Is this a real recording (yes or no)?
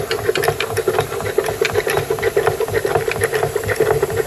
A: yes